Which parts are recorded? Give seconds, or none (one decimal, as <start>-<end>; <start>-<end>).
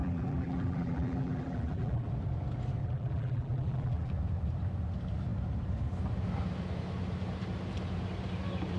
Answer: 2.1-2.8; 4.1-8.8